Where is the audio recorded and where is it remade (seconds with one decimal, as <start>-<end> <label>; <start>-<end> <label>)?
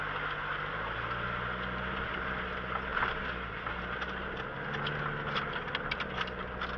0.0-6.8 recorded